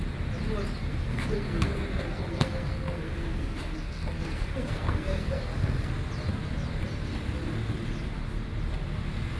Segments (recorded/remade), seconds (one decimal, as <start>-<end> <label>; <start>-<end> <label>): 0.0-0.8 recorded; 0.8-5.9 remade; 5.9-9.4 recorded

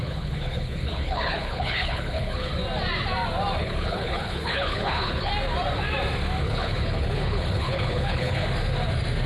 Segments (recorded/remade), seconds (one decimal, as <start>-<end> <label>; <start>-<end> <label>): 0.0-2.5 remade; 2.5-3.6 recorded; 3.6-5.3 remade; 5.3-6.4 recorded; 6.4-8.4 remade; 8.4-9.3 recorded

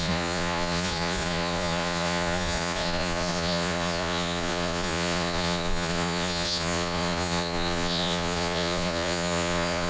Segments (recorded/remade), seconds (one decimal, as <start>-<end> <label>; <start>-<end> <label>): 0.0-9.9 remade

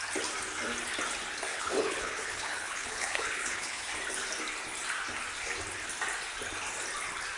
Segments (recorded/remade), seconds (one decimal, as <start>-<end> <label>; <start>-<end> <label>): 0.0-1.5 recorded; 1.5-3.9 remade; 3.9-7.4 recorded

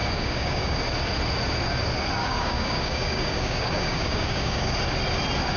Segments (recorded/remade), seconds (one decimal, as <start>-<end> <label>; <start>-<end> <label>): 0.0-0.8 remade; 0.8-2.2 recorded; 2.2-4.7 remade; 4.7-5.6 recorded

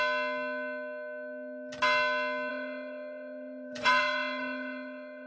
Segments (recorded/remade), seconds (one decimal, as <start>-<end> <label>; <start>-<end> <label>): 0.0-2.5 recorded; 2.5-5.3 remade

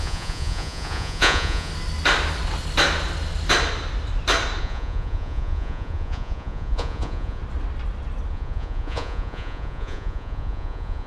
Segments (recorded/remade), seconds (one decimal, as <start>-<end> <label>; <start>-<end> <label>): 0.0-1.7 remade; 1.7-4.6 recorded; 4.6-7.4 remade; 7.4-8.3 recorded; 8.3-11.1 remade

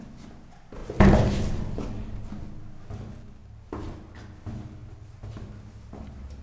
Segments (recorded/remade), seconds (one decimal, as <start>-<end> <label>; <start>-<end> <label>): 0.0-3.4 recorded; 3.4-4.2 remade; 4.2-4.8 recorded; 4.8-5.5 remade; 5.5-6.4 recorded